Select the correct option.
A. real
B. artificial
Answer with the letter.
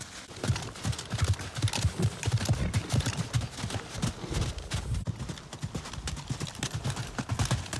A